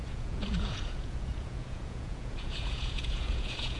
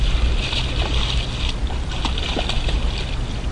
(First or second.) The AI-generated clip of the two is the first